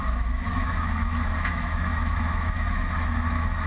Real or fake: fake